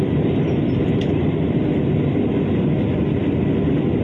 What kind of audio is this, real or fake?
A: real